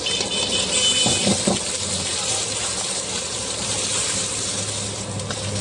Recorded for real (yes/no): yes